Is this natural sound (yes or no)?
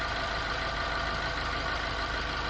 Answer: yes